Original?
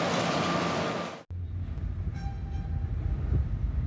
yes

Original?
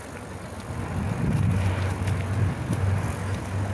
yes